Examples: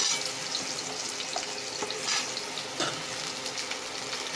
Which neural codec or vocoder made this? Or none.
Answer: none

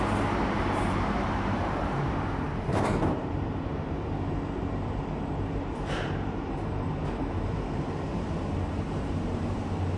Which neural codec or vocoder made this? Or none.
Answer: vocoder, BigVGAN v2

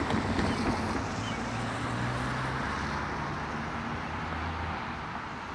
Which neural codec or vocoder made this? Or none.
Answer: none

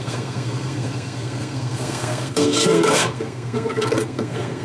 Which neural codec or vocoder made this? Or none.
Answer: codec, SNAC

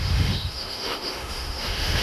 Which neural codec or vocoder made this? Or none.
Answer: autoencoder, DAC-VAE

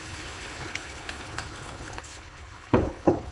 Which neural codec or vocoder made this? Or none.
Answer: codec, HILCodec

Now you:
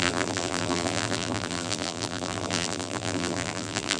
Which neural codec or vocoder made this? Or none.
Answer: vocoder, BigVGAN v2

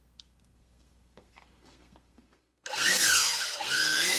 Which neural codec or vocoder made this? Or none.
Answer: codec, SNAC